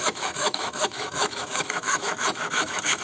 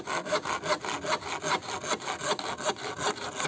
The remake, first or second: first